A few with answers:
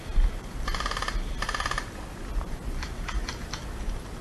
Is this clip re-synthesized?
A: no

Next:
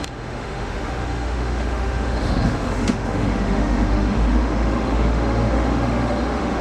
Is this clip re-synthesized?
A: yes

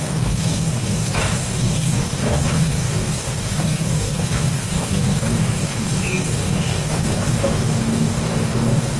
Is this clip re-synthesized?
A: yes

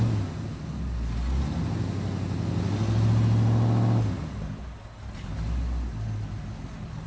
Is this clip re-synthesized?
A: no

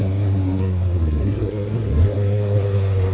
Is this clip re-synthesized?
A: yes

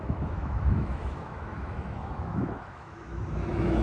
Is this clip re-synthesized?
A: yes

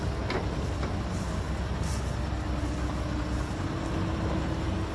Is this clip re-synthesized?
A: no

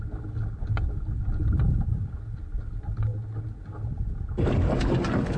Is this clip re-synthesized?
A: no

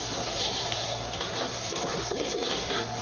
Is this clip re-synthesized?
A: yes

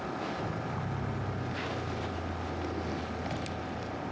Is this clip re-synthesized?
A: no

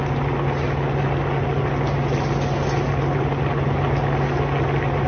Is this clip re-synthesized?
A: no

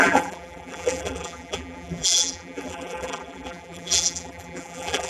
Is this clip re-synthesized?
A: yes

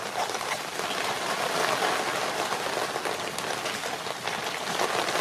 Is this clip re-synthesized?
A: no